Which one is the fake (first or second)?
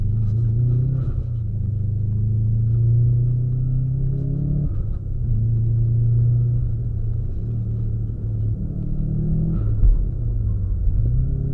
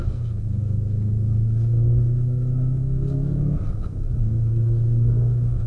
second